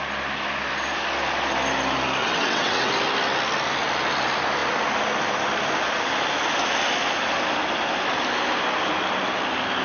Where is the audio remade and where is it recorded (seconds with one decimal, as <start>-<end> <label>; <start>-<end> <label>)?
0.0-2.2 recorded; 2.2-2.9 remade; 2.9-9.8 recorded